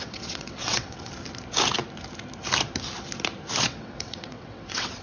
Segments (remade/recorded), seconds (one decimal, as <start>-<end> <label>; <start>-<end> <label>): 0.0-1.1 remade; 1.1-3.7 recorded; 3.7-5.0 remade